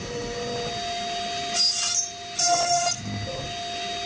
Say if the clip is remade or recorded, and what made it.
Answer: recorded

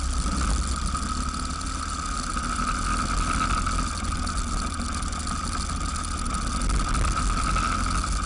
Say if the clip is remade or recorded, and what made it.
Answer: recorded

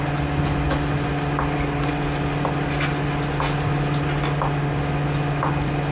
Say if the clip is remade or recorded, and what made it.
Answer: recorded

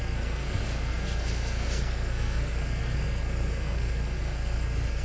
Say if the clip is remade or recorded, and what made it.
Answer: remade, codec, SNAC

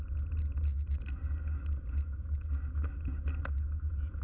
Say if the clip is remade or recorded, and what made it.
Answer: recorded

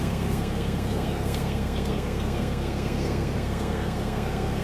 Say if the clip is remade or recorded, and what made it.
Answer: remade, codec, SNAC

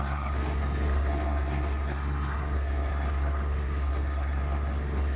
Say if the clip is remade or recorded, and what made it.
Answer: remade, codec, SNAC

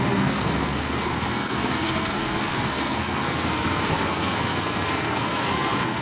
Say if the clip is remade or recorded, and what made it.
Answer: remade, codec, SNAC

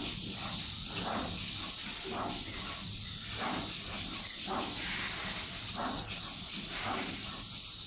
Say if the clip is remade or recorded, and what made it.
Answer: recorded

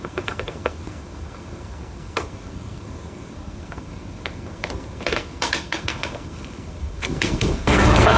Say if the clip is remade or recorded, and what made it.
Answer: remade, codec, SNAC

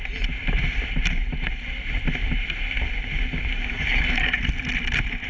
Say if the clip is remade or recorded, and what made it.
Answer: recorded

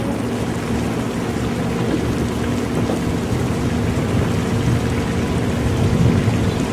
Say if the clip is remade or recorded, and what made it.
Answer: recorded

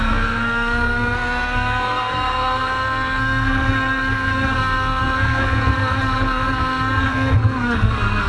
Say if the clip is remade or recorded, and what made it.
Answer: remade, codec, SNAC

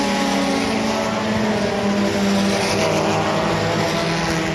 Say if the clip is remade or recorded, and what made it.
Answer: recorded